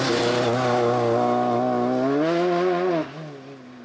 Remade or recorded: recorded